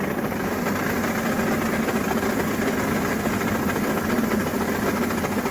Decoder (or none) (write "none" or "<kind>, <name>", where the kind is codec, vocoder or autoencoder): none